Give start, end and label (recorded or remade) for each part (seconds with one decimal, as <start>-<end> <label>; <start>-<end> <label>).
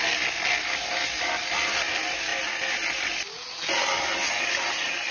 0.0-5.1 recorded